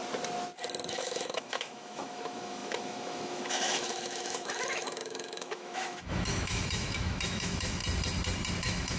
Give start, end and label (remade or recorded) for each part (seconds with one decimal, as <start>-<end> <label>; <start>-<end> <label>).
0.0-0.9 recorded; 0.9-7.8 remade; 7.8-8.6 recorded; 8.6-9.0 remade